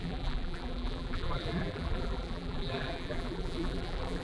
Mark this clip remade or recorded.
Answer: remade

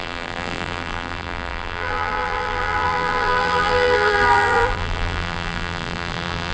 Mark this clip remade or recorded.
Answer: remade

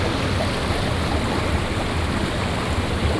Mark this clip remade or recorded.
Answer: remade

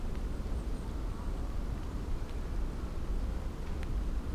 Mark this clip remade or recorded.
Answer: remade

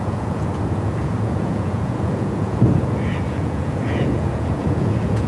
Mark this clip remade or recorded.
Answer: remade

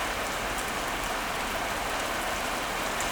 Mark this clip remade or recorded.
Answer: recorded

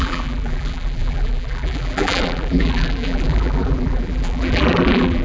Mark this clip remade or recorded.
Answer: remade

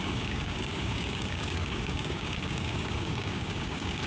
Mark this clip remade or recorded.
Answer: remade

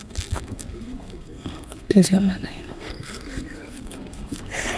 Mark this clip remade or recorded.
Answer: remade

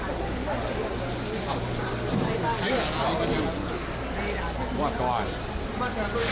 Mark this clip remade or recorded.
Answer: recorded